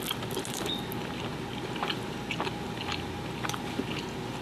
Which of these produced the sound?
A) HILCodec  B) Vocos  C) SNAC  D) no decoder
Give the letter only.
D